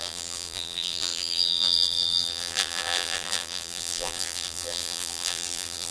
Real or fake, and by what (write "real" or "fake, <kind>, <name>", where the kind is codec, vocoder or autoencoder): fake, vocoder, BigVGAN v2